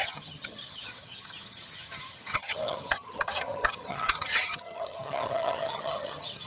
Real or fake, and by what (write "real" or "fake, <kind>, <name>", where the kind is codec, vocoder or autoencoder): fake, vocoder, HiFi-GAN